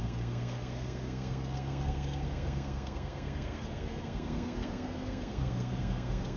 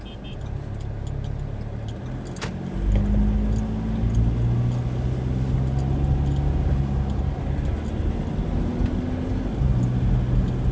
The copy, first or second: first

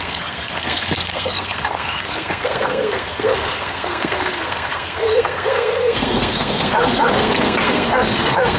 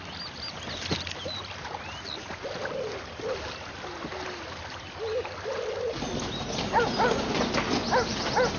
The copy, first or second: first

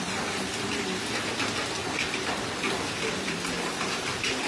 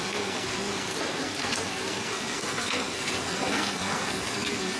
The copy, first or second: second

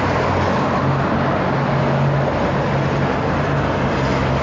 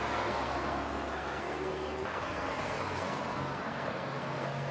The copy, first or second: second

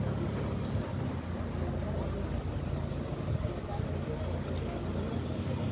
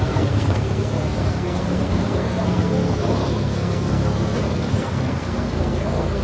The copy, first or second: second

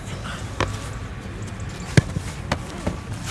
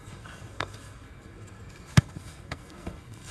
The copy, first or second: second